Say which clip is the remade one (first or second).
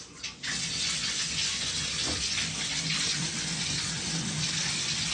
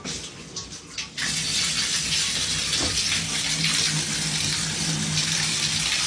first